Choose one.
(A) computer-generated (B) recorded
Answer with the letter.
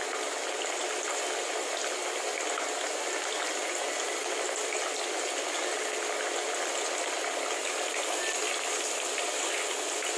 B